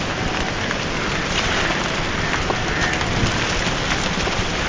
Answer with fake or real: real